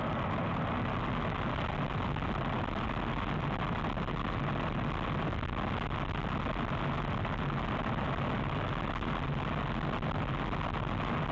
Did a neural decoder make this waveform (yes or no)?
no